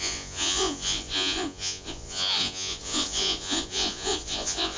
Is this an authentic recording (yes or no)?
no